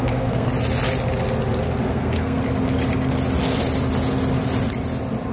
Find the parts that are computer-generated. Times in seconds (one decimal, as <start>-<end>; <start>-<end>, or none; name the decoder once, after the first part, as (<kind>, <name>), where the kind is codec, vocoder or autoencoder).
0.0-0.5 (codec, SNAC); 1.9-2.4